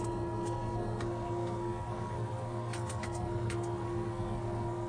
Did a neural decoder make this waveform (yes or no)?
yes